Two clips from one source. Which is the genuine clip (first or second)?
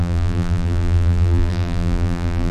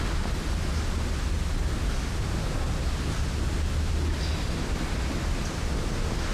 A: second